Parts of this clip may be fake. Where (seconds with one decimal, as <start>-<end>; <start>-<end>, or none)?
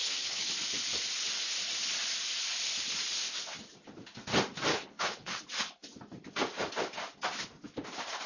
0.0-0.5; 4.7-5.4